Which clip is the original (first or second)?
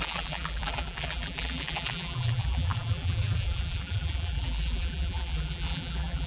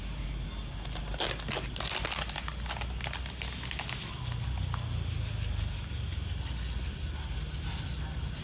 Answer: second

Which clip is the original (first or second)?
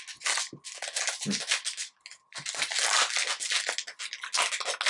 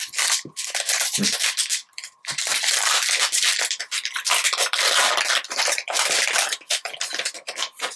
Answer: first